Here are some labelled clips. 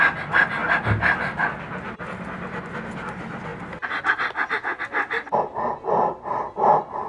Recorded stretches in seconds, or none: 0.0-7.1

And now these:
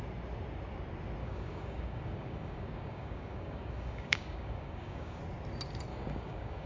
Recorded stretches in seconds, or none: 0.0-1.2; 5.2-5.9